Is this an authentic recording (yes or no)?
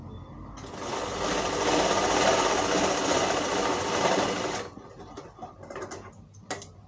yes